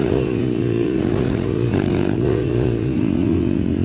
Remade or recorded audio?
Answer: remade